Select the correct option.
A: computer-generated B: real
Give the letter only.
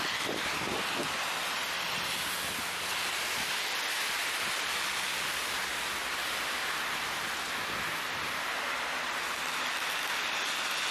B